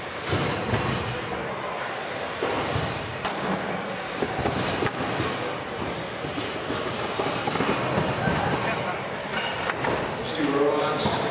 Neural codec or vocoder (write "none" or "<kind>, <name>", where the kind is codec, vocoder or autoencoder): none